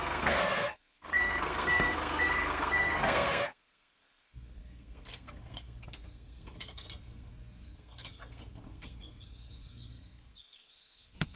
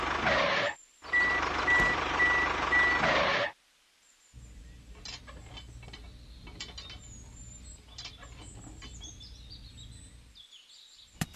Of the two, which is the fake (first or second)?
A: first